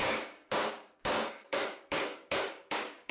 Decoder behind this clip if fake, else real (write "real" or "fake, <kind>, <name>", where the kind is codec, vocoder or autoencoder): fake, codec, DAC